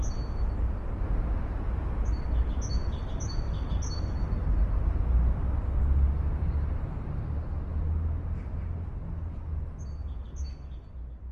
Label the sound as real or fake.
real